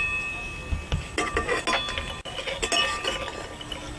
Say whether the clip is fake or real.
real